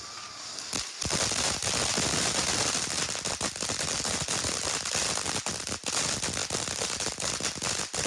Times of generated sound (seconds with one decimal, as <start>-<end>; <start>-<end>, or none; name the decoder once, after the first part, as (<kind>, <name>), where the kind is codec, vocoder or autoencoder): none